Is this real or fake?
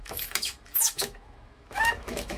fake